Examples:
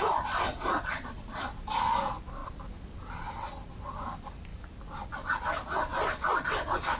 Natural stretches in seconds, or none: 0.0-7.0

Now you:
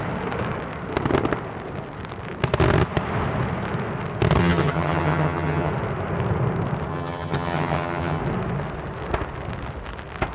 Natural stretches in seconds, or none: 0.0-4.4; 5.7-6.9; 8.2-10.3